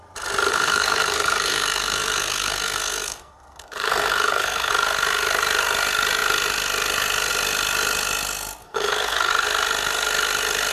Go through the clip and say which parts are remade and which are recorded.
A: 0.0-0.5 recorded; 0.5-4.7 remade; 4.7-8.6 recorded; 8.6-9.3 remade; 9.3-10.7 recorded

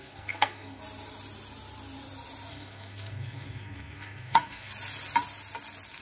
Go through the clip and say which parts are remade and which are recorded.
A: 0.0-0.8 remade; 0.8-2.5 recorded; 2.5-4.7 remade; 4.7-6.0 recorded

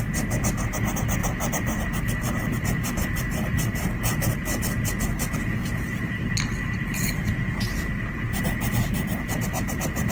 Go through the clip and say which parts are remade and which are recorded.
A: 0.0-1.2 recorded; 1.2-3.9 remade; 3.9-5.6 recorded; 5.6-6.3 remade; 6.3-9.1 recorded; 9.1-10.1 remade

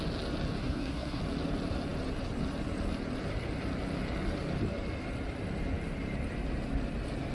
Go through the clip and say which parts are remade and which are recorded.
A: 0.0-0.6 recorded; 0.6-1.2 remade; 1.2-7.3 recorded

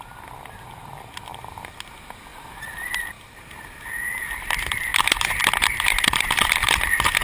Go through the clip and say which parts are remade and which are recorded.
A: 0.0-7.2 recorded